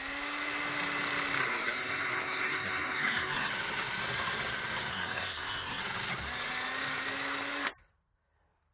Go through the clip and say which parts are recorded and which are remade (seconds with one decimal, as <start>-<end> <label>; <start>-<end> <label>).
0.0-1.4 recorded; 1.4-3.5 remade; 3.5-4.9 recorded; 4.9-5.8 remade; 5.8-8.7 recorded